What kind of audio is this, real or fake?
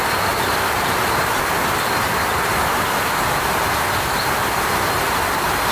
real